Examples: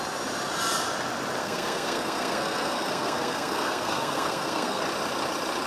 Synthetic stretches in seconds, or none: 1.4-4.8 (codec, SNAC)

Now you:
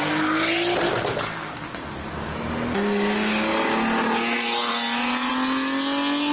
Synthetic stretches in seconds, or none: none

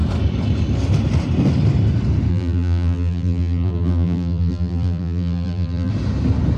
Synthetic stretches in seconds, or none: 2.3-5.9 (vocoder, BigVGAN v2)

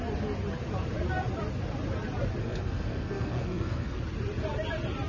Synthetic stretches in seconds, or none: 2.4-4.0 (codec, SNAC)